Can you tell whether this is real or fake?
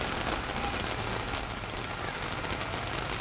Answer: real